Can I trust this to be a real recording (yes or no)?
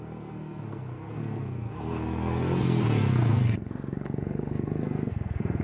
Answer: no